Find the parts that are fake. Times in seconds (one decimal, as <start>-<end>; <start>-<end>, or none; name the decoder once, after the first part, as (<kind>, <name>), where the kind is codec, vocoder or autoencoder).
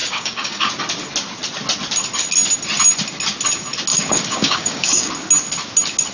0.0-0.7 (codec, DAC); 3.9-5.1